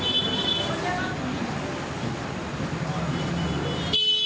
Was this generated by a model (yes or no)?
no